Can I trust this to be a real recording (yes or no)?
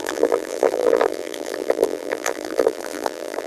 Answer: no